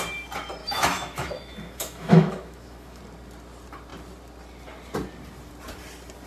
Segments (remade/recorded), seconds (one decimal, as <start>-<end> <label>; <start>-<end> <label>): 0.0-0.6 recorded; 0.6-3.0 remade; 3.0-6.3 recorded